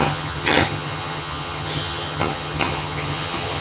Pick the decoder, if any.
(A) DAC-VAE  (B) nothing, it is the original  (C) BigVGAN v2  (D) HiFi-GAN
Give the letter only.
D